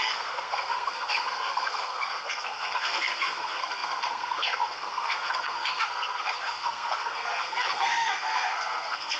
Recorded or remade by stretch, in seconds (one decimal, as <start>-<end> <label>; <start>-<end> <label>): 0.0-9.2 remade